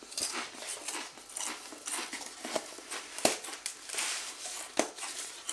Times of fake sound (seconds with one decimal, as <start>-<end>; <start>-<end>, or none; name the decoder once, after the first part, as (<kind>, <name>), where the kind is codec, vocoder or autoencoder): 0.0-0.7 (vocoder, BigVGAN v2); 4.0-5.5